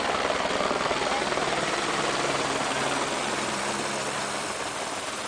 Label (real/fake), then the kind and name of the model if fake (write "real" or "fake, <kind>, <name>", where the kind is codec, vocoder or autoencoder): fake, vocoder, BigVGAN v2